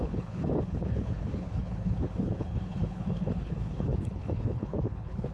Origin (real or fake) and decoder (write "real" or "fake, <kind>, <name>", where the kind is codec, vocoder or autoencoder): fake, codec, HILCodec